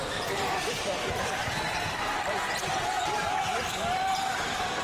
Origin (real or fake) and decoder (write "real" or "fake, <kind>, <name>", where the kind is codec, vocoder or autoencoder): fake, vocoder, BigVGAN v2